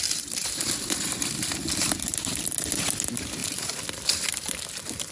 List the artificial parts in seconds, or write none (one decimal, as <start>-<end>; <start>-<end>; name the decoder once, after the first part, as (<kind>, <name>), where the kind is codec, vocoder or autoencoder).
0.0-5.1 (vocoder, BigVGAN v2)